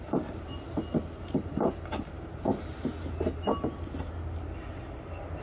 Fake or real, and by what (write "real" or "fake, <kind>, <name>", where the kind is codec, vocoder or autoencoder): real